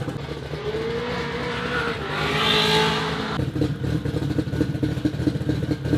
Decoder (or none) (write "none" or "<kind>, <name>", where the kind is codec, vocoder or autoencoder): none